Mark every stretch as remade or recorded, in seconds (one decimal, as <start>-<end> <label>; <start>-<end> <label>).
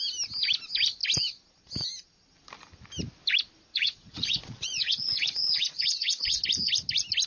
0.0-3.7 recorded; 3.7-6.4 remade; 6.4-7.3 recorded